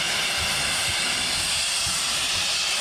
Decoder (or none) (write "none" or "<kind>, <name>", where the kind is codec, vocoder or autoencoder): none